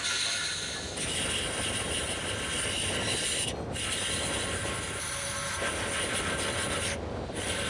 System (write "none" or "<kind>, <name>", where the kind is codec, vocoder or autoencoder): none